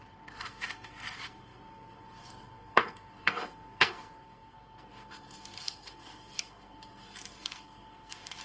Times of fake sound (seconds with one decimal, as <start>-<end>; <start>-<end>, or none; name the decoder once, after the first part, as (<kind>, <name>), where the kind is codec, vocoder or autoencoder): 0.0-8.4 (codec, SNAC)